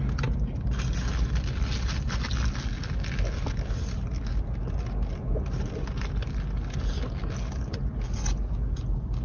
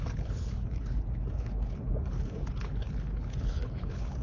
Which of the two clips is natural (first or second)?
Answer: first